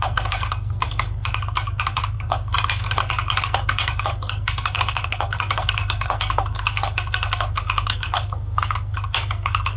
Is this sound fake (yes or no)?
yes